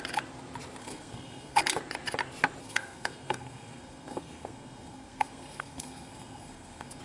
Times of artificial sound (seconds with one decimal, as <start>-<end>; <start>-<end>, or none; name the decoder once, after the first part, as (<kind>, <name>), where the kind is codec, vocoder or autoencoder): 0.8-1.6 (codec, SNAC); 2.6-7.0